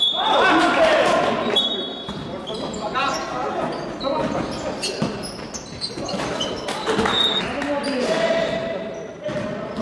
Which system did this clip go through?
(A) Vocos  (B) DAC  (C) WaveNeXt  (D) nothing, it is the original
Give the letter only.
D